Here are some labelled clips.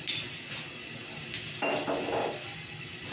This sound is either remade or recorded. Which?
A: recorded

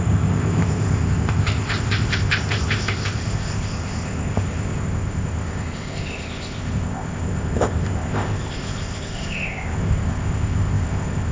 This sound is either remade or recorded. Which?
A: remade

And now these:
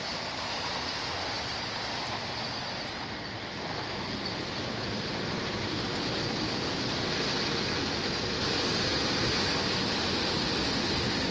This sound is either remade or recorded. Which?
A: recorded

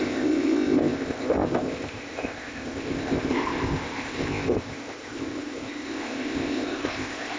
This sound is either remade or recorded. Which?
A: remade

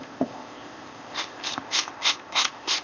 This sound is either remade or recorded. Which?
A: remade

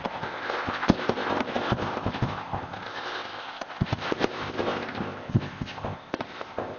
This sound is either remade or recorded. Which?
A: remade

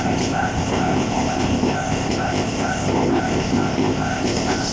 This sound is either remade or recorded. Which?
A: remade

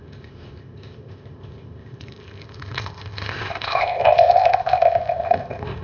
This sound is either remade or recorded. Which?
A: remade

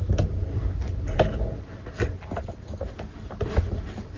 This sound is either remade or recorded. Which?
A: recorded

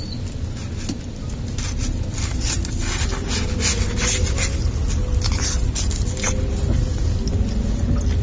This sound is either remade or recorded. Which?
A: recorded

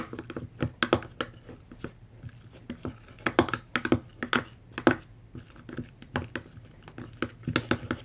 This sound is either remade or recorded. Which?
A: recorded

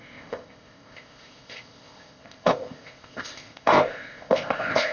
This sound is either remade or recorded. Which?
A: remade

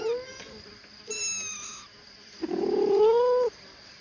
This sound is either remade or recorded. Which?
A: recorded